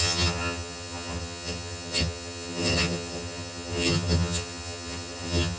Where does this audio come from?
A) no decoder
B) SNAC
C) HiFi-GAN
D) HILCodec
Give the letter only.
C